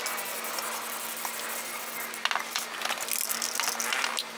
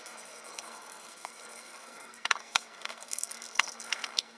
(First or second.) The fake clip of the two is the second